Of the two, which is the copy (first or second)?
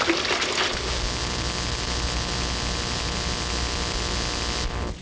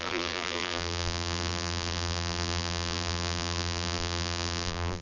second